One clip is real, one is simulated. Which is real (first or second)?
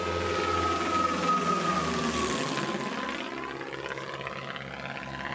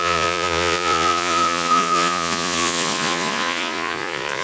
first